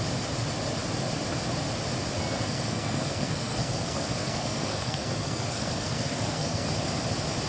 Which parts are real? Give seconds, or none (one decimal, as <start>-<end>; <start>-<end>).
0.0-2.2; 6.7-7.5